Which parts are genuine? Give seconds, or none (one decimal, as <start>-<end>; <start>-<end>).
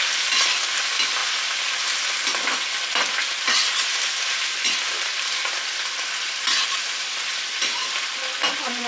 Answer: 0.0-8.9